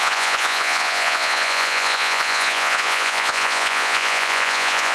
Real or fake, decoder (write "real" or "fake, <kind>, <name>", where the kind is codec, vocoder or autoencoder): fake, vocoder, Vocos